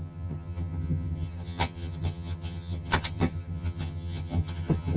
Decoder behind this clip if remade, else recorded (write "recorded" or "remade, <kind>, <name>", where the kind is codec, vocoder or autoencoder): remade, vocoder, HiFi-GAN